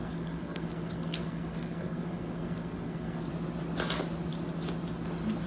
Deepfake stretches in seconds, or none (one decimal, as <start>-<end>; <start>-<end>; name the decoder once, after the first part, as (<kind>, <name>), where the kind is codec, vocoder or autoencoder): 0.0-3.3 (codec, SNAC)